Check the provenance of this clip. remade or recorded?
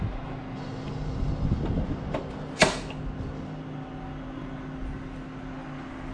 recorded